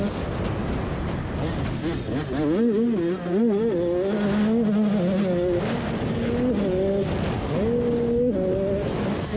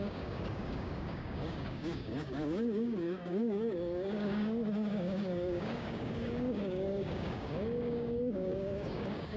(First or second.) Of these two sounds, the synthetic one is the second